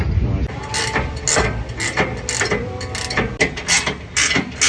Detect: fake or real real